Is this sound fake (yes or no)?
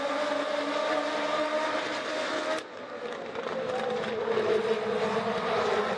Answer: no